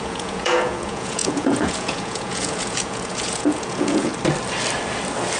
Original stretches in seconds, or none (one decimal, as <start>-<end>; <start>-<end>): 4.1-5.4